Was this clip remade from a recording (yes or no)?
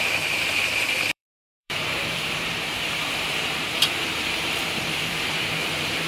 yes